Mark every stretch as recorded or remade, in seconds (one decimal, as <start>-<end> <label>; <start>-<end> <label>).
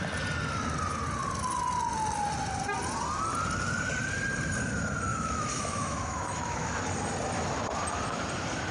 0.0-5.1 recorded; 5.1-6.7 remade; 6.7-8.7 recorded